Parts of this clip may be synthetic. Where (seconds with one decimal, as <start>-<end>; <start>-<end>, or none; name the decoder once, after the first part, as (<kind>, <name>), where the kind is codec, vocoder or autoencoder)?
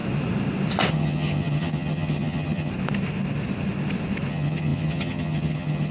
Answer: 0.9-2.7 (vocoder, HiFi-GAN); 4.3-5.9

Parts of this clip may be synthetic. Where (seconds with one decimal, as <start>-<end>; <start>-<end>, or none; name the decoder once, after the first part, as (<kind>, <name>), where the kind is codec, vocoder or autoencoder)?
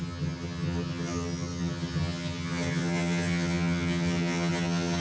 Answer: 0.0-5.0 (vocoder, HiFi-GAN)